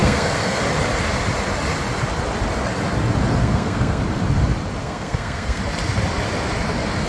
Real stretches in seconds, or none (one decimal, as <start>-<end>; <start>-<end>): 0.6-3.4; 4.0-4.8; 5.6-7.1

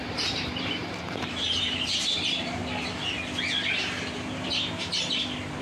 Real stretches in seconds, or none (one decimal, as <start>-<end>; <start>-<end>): 2.6-4.0; 4.8-5.6